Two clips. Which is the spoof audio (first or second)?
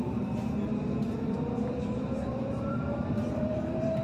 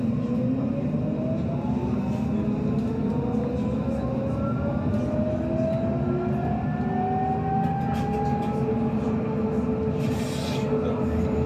first